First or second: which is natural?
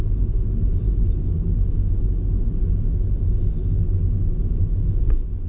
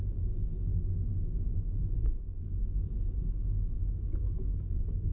first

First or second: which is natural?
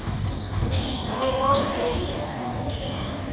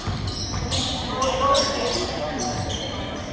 second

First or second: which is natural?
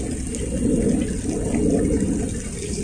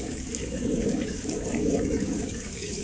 first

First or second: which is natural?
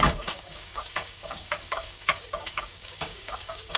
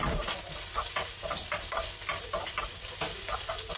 second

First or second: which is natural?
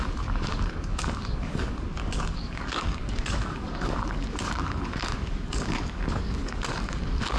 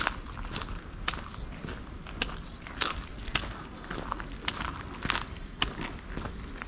second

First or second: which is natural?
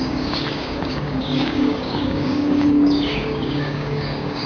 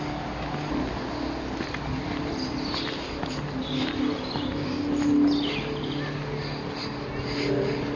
second